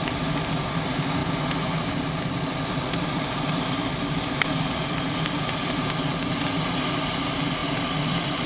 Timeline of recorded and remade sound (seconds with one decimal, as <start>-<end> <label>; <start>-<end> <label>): 0.0-1.2 recorded; 1.2-4.8 remade; 4.8-8.5 recorded